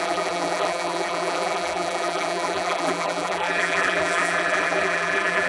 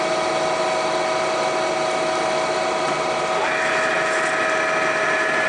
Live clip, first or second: second